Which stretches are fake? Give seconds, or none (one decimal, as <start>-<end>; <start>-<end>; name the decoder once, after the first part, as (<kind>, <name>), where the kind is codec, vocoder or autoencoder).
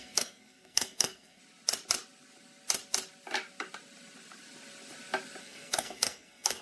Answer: 0.0-1.4 (codec, SNAC); 5.4-6.6